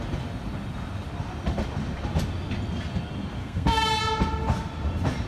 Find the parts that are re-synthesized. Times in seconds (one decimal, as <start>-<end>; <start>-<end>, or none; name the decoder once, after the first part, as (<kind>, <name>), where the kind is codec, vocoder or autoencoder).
3.4-3.9 (codec, SNAC)